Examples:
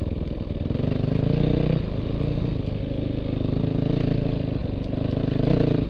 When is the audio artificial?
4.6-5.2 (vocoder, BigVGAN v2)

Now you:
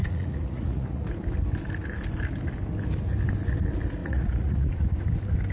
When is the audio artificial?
0.0-1.0 (vocoder, Vocos); 4.0-4.9

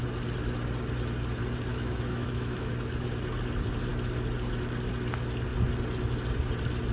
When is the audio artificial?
1.7-2.7 (autoencoder, DAC-VAE)